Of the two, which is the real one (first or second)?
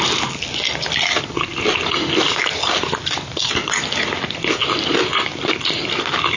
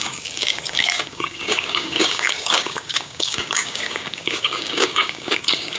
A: first